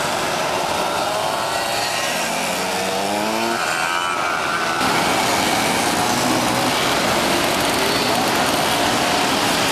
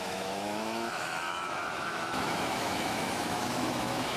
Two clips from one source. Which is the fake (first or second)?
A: second